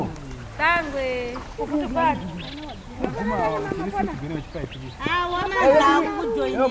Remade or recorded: recorded